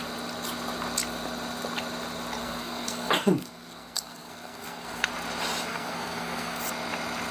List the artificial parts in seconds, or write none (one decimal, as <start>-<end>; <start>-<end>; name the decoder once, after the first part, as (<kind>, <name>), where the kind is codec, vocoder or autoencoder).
2.4-5.1 (codec, SNAC); 5.7-6.6